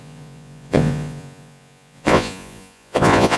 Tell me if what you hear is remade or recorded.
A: remade